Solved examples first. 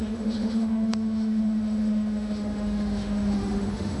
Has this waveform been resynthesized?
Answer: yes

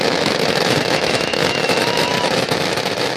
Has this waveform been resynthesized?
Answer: yes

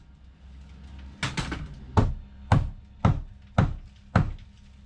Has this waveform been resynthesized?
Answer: no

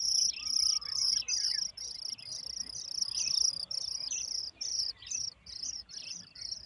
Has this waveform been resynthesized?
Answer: yes